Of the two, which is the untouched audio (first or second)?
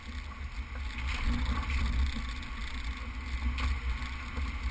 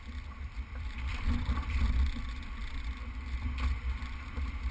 first